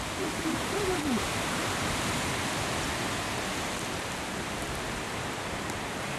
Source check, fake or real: real